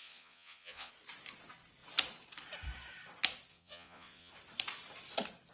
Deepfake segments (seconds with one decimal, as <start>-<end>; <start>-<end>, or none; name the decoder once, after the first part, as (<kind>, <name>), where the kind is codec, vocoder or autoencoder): 0.0-0.9 (vocoder, Vocos); 3.5-4.3